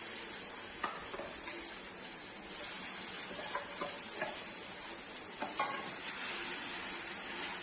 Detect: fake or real real